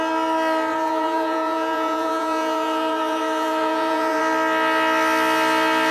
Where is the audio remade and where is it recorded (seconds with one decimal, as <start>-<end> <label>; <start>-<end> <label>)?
0.0-0.7 recorded; 0.7-4.2 remade; 4.2-5.9 recorded